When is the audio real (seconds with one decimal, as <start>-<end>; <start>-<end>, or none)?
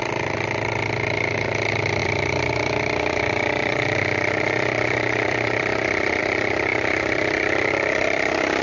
0.0-2.0; 6.2-6.7; 7.7-8.6